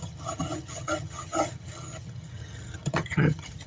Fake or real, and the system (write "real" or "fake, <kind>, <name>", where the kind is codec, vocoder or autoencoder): fake, vocoder, HiFi-GAN